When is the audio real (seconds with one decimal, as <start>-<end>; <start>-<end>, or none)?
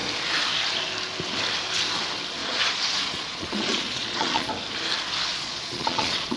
0.0-2.4; 4.5-5.3